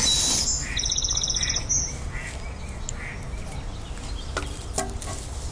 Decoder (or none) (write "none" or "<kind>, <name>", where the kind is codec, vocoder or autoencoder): none